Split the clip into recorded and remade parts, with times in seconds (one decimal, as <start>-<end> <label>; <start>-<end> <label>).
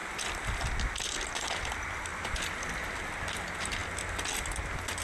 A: 0.0-5.0 recorded